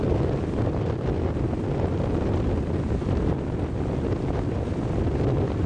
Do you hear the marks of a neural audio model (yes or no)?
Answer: no